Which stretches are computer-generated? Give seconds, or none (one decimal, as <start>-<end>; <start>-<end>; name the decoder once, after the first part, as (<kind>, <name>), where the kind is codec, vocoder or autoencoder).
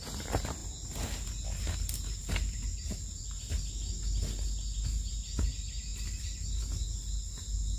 none